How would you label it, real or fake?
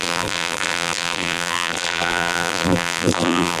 fake